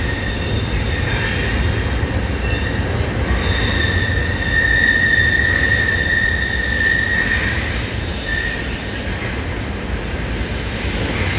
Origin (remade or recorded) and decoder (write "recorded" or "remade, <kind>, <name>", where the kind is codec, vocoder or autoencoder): recorded